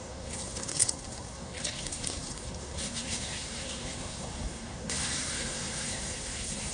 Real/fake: fake